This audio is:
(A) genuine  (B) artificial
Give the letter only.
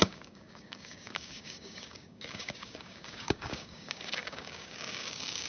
B